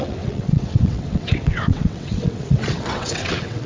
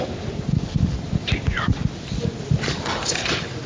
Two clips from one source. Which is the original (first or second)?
second